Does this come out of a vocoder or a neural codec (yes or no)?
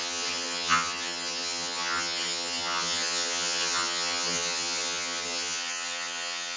yes